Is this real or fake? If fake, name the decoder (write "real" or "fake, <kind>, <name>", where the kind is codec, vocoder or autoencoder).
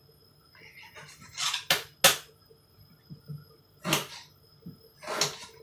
real